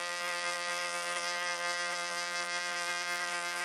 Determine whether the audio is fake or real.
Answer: fake